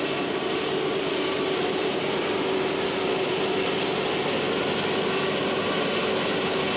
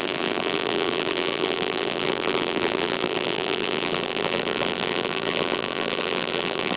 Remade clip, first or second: second